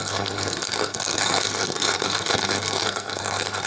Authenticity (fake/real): fake